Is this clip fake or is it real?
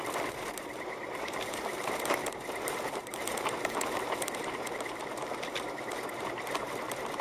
fake